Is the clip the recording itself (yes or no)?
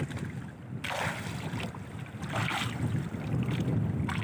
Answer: yes